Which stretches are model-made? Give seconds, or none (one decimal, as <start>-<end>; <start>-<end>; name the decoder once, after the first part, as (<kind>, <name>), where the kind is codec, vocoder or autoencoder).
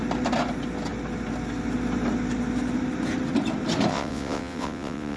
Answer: 3.9-5.2 (vocoder, WaveNeXt)